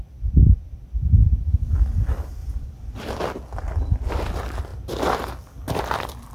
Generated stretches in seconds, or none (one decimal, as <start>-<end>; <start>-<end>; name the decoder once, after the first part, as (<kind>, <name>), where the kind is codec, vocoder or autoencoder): 2.4-3.2 (vocoder, BigVGAN v2); 4.7-6.3